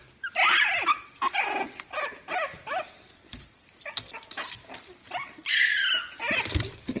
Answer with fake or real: real